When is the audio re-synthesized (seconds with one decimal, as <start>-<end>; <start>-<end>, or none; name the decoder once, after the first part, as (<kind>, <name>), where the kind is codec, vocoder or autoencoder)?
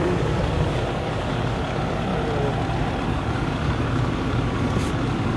0.0-2.1 (codec, DAC); 3.0-5.4